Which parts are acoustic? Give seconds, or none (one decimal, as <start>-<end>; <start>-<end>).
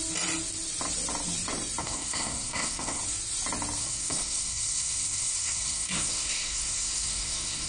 0.0-1.8; 3.0-3.8